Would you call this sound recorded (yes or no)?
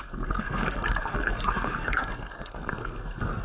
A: no